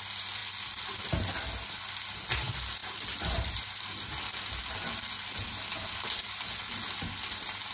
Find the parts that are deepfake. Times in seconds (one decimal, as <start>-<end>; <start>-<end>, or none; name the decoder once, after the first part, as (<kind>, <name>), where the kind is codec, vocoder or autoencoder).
none

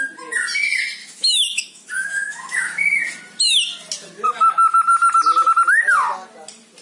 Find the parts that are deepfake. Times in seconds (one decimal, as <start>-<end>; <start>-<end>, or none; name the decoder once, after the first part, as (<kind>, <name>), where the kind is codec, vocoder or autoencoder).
1.0-3.0 (autoencoder, DAC-VAE)

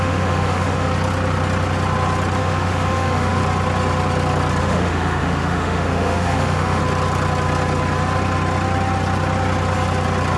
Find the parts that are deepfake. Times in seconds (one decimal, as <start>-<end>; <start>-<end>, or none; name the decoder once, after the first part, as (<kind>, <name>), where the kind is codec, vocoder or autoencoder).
0.0-0.9 (autoencoder, DAC-VAE); 2.4-3.4; 4.6-6.8

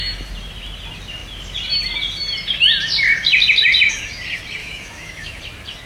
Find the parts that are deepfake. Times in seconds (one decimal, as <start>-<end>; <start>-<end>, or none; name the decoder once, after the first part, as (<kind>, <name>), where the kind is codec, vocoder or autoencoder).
4.6-5.4 (autoencoder, DAC-VAE)

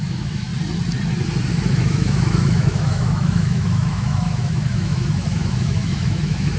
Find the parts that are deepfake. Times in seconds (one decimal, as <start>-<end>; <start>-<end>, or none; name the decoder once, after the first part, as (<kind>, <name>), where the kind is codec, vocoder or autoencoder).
0.0-0.5 (autoencoder, DAC-VAE); 1.5-6.6